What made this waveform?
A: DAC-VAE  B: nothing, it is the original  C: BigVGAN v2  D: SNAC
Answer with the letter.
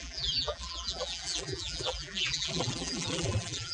C